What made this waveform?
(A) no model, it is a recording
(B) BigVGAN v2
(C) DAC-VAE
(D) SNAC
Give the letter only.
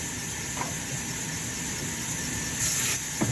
A